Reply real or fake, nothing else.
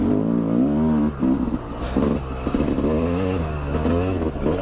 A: real